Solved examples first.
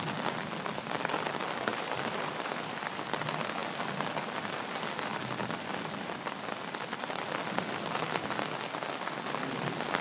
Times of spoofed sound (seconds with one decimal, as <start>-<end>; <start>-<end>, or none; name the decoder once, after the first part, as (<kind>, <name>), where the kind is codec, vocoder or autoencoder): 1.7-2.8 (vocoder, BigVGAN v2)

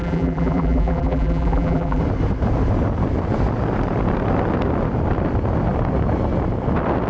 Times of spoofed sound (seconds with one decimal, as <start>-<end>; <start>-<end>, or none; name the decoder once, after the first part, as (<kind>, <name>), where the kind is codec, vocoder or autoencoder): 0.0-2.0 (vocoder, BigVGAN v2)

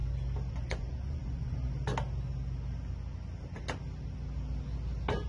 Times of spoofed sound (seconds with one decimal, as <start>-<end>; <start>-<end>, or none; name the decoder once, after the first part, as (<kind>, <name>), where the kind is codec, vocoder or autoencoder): 0.5-1.9 (vocoder, Vocos)

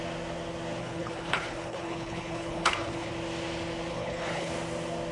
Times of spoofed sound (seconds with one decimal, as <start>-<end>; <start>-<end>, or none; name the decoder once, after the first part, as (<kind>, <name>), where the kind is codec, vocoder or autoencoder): 0.8-3.1 (codec, HILCodec); 3.9-4.5

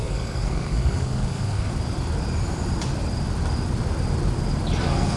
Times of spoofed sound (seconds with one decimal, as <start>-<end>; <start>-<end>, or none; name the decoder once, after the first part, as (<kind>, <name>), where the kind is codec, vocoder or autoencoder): 0.0-1.7 (codec, SNAC); 4.8-5.2

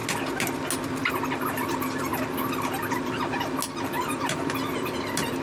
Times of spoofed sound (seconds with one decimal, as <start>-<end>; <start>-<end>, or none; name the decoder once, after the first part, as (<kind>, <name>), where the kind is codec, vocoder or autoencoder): none